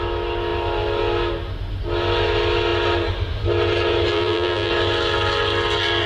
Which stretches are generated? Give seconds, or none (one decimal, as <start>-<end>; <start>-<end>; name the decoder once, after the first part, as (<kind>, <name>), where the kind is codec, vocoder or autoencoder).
4.1-4.7 (vocoder, BigVGAN v2)